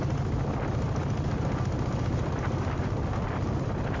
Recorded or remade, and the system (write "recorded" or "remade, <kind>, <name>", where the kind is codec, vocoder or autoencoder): recorded